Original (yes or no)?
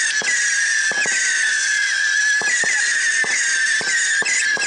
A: yes